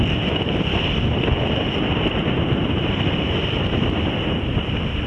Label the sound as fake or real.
real